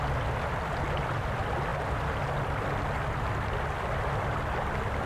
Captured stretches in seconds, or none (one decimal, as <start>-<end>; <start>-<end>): 0.0-5.1